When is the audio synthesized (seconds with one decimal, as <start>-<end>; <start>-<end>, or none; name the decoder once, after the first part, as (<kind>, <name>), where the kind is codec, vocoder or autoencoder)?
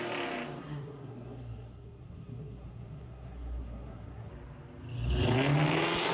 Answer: 0.6-4.3 (codec, SNAC)